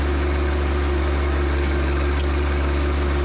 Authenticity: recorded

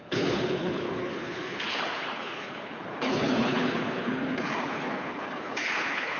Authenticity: remade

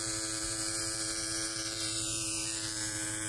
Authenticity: remade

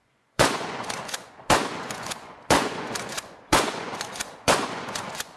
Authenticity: remade